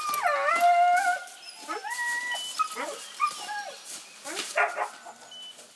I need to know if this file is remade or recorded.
recorded